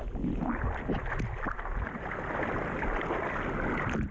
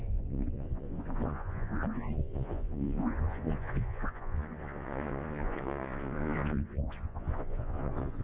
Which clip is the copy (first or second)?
second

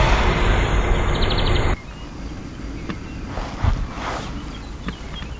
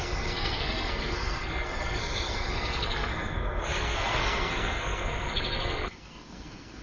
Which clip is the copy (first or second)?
second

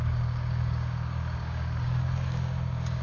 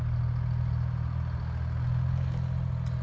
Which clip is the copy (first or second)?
first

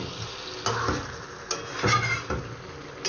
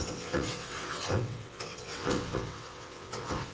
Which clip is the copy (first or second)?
second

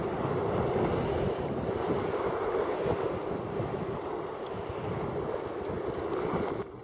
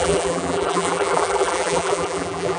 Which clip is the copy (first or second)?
second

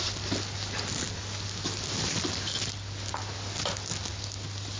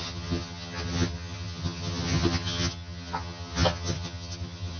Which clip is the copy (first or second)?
second